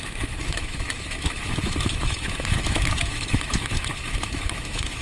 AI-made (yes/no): yes